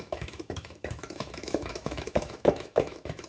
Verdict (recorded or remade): remade